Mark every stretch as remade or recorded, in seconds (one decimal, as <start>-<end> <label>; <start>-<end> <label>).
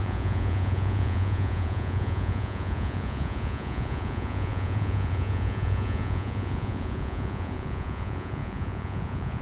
0.0-9.4 remade